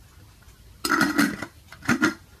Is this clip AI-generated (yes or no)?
yes